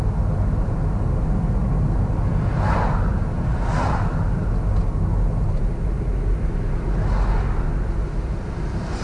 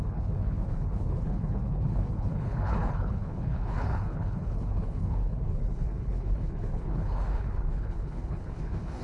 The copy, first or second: second